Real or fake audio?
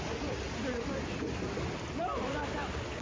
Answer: real